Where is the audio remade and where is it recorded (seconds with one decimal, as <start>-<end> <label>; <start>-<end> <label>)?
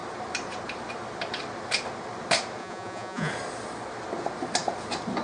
0.0-2.6 recorded; 2.6-3.3 remade; 3.3-5.2 recorded